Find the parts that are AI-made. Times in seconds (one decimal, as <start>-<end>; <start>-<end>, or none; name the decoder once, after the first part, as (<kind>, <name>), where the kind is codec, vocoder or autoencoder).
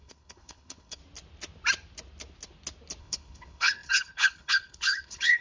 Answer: 0.0-1.0 (codec, HILCodec); 3.0-5.4